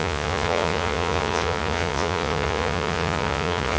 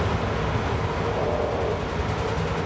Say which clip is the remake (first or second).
first